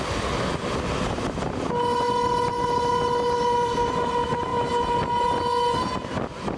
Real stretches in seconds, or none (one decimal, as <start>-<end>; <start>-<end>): 0.0-6.6

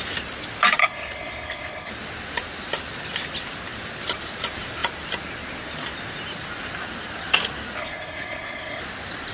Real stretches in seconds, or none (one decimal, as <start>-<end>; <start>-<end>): 0.0-0.8; 1.9-7.8; 8.8-9.3